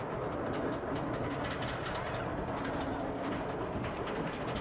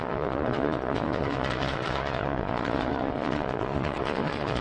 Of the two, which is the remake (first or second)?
second